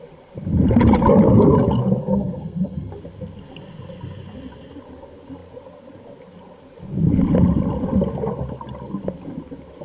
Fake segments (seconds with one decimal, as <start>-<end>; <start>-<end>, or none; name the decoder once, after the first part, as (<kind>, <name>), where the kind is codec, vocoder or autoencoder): 2.0-2.9 (codec, SNAC)